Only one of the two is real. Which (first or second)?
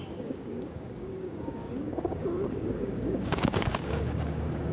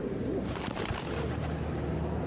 second